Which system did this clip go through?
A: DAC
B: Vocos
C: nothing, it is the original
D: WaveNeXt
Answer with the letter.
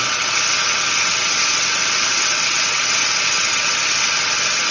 D